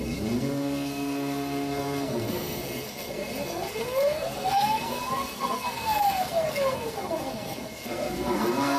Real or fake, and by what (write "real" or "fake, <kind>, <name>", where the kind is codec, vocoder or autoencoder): fake, codec, SNAC